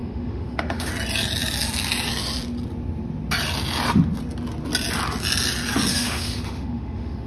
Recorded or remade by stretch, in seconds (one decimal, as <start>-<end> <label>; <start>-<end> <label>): 0.0-0.9 remade; 0.9-5.9 recorded; 5.9-7.3 remade